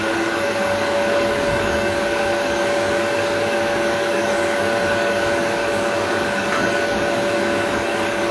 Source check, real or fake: fake